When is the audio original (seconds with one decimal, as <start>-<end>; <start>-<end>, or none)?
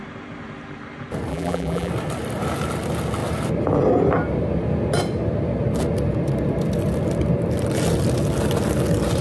0.0-1.3; 1.9-9.2